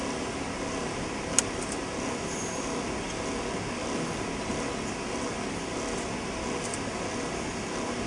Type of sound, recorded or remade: recorded